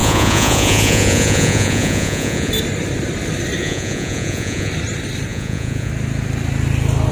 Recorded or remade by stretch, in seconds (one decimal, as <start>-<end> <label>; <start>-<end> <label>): 0.0-2.5 remade; 2.5-3.6 recorded; 3.6-4.7 remade; 4.7-5.3 recorded; 5.3-5.9 remade; 5.9-7.1 recorded